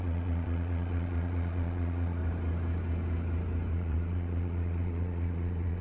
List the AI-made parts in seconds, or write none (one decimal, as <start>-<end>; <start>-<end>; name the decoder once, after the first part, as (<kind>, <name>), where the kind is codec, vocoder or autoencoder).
0.0-2.2 (vocoder, Vocos); 3.7-5.8